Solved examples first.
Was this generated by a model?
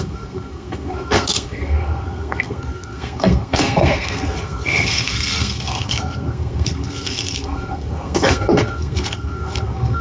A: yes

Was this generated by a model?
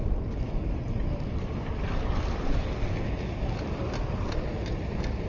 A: no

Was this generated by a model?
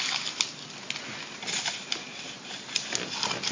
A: no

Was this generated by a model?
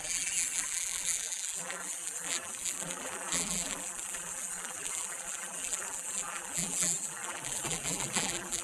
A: yes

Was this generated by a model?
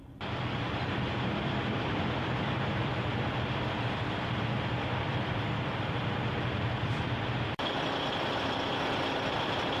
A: yes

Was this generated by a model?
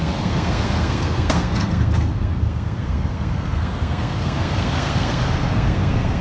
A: yes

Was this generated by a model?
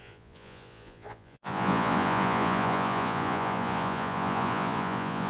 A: yes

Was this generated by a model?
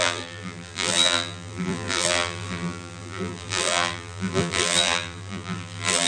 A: yes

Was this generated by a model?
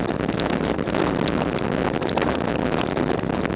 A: no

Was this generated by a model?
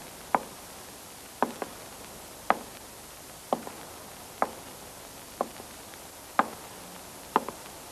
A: no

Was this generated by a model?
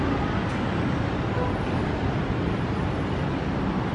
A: no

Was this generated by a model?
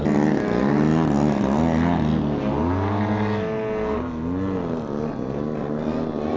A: no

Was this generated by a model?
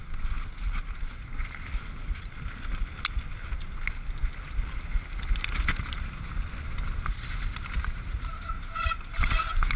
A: no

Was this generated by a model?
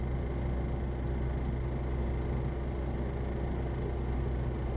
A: no